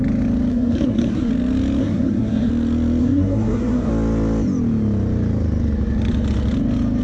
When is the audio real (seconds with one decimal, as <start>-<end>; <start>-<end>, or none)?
0.0-0.5; 1.3-1.8; 2.5-3.0; 3.9-7.0